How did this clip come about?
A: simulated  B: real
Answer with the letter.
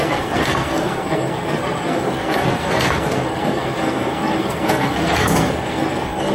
A